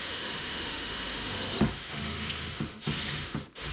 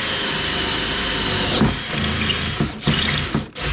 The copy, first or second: first